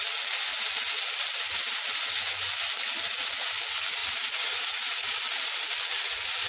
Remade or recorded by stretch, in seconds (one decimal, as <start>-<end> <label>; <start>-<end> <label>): 0.0-4.0 recorded; 4.0-5.0 remade; 5.0-6.5 recorded